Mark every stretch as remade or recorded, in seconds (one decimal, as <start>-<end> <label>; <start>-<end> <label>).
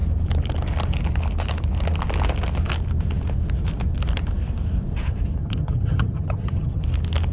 0.0-5.4 recorded; 5.4-6.8 remade; 6.8-7.3 recorded